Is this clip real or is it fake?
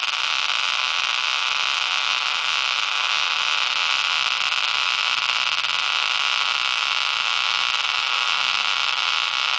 real